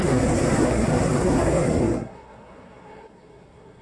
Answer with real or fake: fake